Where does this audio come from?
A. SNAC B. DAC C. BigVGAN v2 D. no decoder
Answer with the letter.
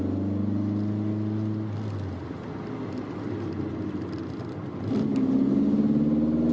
D